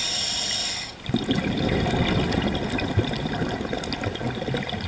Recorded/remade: recorded